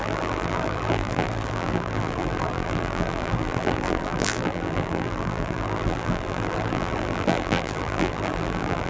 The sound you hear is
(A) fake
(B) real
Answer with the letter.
A